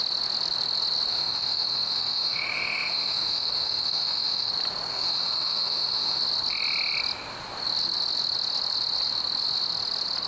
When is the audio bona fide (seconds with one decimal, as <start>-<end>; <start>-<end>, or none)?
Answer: 0.0-1.1; 4.5-4.9; 6.2-10.3